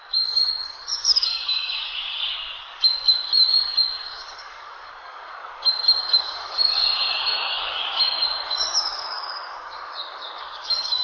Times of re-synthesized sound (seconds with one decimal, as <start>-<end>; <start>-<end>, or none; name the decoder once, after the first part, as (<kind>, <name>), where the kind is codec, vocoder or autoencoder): 0.0-11.0 (codec, DAC)